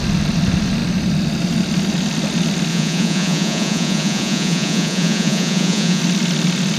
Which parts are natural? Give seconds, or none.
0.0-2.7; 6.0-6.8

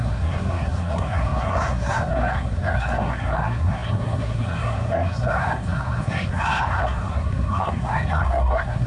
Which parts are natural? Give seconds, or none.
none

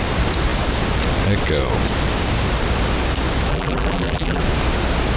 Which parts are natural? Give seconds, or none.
0.0-3.5; 4.4-5.2

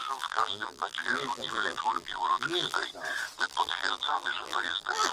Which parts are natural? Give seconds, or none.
2.8-3.4

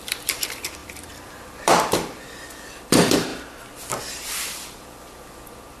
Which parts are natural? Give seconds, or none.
3.3-4.0

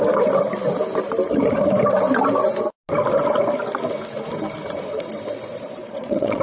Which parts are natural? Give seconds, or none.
0.0-5.8

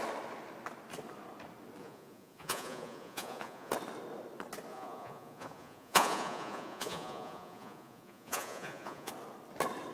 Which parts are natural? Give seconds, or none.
0.0-1.8; 3.7-4.7; 9.1-9.9

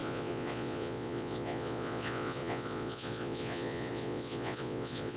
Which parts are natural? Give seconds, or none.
none